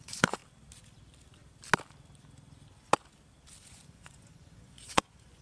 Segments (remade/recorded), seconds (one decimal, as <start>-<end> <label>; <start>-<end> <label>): 0.0-0.4 remade; 0.4-3.6 recorded; 3.6-5.4 remade

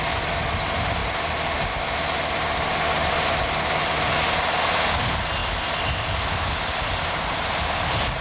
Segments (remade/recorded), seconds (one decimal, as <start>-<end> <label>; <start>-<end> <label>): 0.0-8.2 recorded

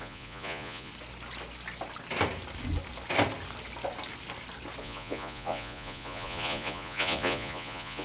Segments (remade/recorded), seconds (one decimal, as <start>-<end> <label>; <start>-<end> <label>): 0.0-0.9 remade; 0.9-4.8 recorded; 4.8-8.0 remade

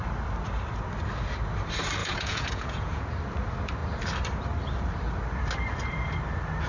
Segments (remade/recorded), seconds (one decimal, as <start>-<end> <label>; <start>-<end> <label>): 0.0-2.0 recorded; 2.0-3.1 remade; 3.1-6.7 recorded

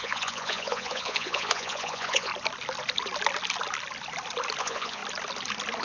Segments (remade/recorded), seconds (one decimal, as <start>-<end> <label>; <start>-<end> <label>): 0.0-2.3 remade; 2.3-4.6 recorded; 4.6-5.0 remade; 5.0-5.8 recorded

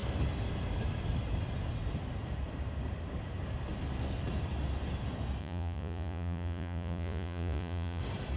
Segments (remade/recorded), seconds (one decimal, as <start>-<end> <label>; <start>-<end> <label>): 0.0-5.4 recorded; 5.4-8.0 remade; 8.0-8.4 recorded